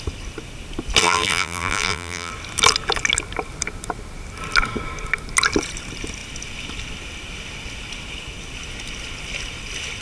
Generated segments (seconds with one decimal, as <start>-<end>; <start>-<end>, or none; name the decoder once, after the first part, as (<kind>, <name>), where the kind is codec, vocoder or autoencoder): 1.0-2.3 (vocoder, BigVGAN v2)